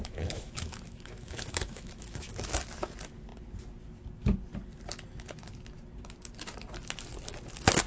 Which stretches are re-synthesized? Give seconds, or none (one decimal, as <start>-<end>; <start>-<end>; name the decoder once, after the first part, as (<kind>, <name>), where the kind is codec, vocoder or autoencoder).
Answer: 0.0-2.6 (autoencoder, DAC-VAE)